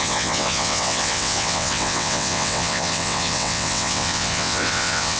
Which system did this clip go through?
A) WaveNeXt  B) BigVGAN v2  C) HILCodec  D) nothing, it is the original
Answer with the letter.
A